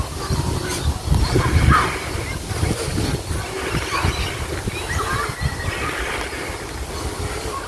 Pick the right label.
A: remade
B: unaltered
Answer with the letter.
B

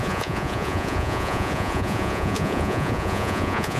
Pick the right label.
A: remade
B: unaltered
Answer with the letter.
A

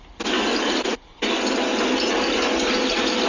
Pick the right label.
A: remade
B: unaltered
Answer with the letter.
B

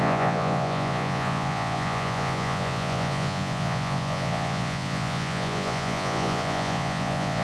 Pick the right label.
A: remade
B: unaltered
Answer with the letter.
A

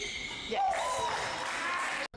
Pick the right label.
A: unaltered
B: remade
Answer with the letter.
A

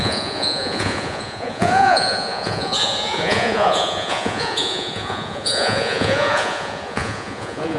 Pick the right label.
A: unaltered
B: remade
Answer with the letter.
B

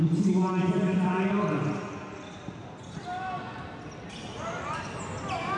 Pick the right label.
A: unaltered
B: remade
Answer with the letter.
A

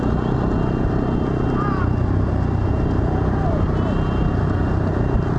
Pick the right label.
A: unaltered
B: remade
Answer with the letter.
A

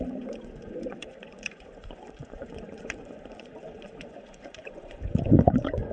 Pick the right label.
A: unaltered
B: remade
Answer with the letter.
B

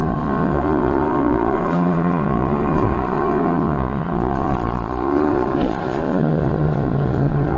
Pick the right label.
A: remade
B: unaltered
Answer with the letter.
A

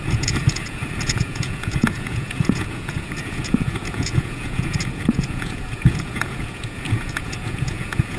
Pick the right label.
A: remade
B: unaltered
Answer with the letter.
A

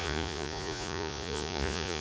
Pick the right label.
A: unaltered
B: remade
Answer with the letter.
B